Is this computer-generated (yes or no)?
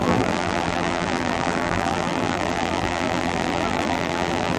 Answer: yes